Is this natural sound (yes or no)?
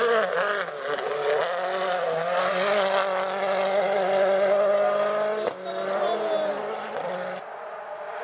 yes